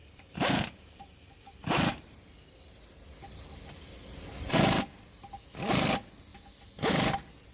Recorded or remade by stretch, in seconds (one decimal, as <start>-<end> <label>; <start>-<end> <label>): 0.0-2.7 remade; 2.7-3.8 recorded; 3.8-4.5 remade; 4.5-7.5 recorded